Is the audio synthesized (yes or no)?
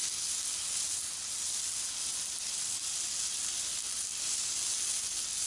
no